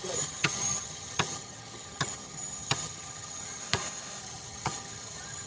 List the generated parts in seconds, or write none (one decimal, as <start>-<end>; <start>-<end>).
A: 0.0-3.6; 4.2-5.5